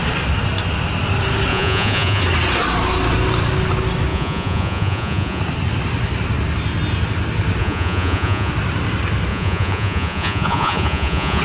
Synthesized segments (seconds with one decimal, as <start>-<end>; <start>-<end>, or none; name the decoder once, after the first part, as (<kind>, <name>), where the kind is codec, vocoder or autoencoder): 1.5-2.2 (vocoder, Vocos); 4.1-5.4; 7.6-8.5; 9.3-11.4